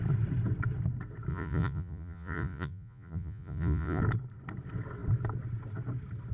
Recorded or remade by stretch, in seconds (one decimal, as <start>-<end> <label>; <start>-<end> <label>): 0.0-1.3 recorded; 1.3-4.0 remade; 4.0-6.3 recorded